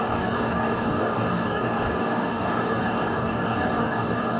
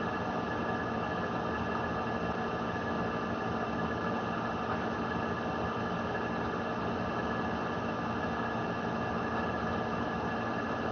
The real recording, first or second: second